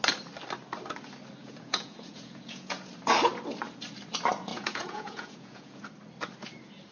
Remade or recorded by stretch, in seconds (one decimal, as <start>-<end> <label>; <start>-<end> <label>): 0.0-1.4 recorded; 1.4-2.9 remade; 2.9-4.5 recorded; 4.5-5.8 remade; 5.8-6.9 recorded